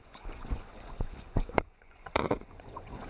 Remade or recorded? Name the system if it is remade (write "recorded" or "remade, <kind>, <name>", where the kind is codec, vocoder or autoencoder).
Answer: remade, vocoder, Vocos